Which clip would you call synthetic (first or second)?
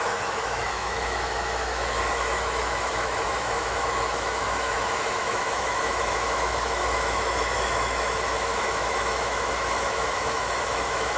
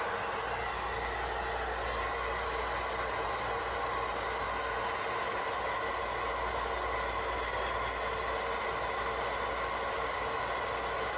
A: first